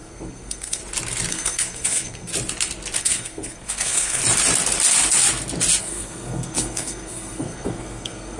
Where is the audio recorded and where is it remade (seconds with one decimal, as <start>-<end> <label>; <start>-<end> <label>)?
0.0-0.8 remade; 0.8-1.3 recorded; 1.3-2.3 remade; 2.3-3.0 recorded; 3.0-4.2 remade; 4.2-5.8 recorded; 5.8-8.4 remade